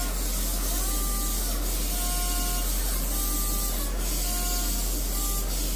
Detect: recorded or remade recorded